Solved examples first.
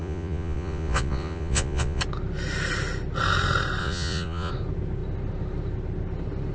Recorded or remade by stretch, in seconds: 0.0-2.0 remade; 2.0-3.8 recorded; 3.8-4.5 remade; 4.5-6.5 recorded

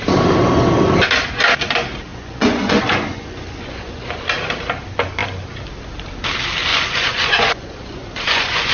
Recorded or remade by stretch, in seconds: 0.0-2.1 recorded; 2.1-4.2 remade; 4.2-6.7 recorded; 6.7-8.7 remade

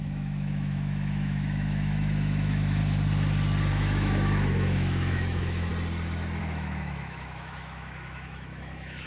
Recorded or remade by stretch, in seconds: 0.0-2.8 remade; 2.8-3.7 recorded; 3.7-5.7 remade; 5.7-6.4 recorded; 6.4-9.1 remade

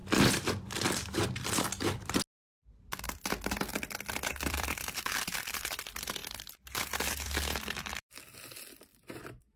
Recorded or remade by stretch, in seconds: 0.0-4.1 recorded; 4.1-6.2 remade; 6.2-7.1 recorded; 7.1-9.6 remade

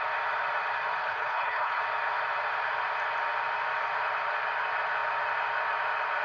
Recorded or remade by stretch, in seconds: 0.0-1.0 recorded; 1.0-1.8 remade; 1.8-6.2 recorded

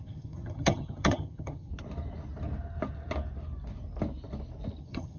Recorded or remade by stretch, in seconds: 0.0-1.7 remade; 1.7-4.8 recorded; 4.8-5.2 remade

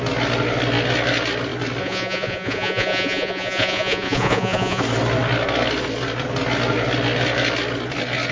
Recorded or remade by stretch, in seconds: 0.0-1.8 recorded; 1.8-4.8 remade; 4.8-8.3 recorded